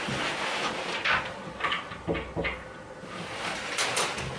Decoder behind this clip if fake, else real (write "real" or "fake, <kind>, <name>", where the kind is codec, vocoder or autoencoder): real